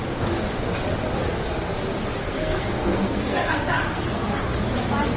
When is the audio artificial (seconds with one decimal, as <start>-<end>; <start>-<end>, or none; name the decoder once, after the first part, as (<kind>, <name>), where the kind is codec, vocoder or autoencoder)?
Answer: 2.2-4.4 (codec, SNAC)